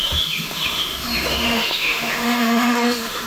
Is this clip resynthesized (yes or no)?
yes